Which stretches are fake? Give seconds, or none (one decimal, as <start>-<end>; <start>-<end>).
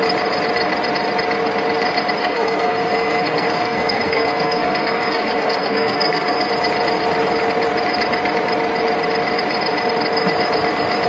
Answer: 2.2-6.5